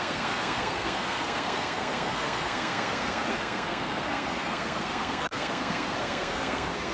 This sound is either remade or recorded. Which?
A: remade